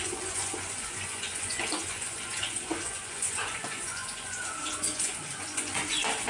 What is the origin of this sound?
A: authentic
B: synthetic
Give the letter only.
B